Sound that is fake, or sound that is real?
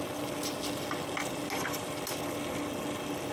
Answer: real